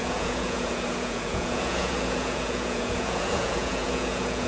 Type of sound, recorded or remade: remade